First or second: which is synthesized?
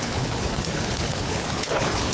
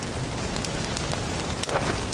first